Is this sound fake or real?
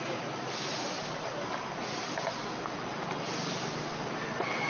real